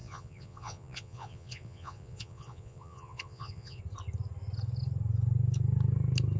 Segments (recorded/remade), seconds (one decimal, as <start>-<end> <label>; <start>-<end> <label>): 0.0-3.8 remade; 3.8-6.4 recorded